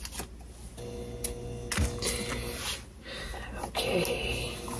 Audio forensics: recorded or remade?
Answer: recorded